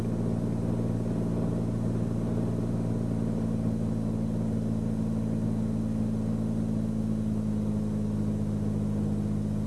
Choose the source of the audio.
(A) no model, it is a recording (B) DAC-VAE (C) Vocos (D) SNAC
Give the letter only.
A